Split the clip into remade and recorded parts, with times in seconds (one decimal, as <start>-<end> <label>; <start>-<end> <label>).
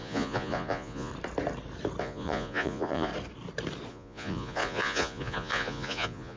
0.0-1.1 remade; 1.1-2.0 recorded; 2.0-3.1 remade; 3.1-3.9 recorded; 3.9-6.4 remade